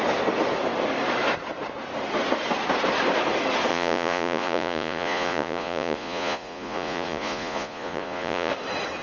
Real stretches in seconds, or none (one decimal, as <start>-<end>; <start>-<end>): 0.0-3.7; 8.5-9.0